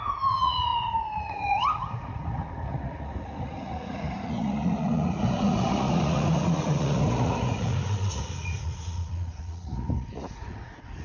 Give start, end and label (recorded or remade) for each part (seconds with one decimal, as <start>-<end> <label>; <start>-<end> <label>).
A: 0.0-11.0 remade